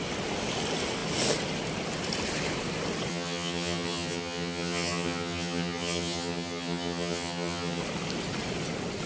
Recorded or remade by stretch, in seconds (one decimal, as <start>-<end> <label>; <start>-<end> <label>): 0.0-3.1 recorded; 3.1-7.8 remade; 7.8-9.1 recorded